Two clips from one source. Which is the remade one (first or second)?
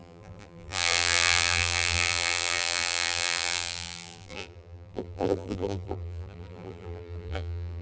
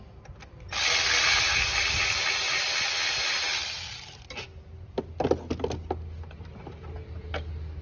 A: first